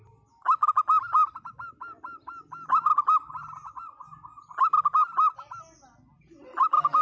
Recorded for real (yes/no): yes